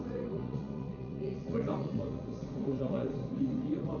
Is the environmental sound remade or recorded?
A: remade